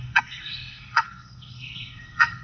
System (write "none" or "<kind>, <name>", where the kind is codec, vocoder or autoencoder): codec, SNAC